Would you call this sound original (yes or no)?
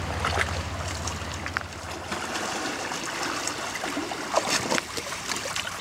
yes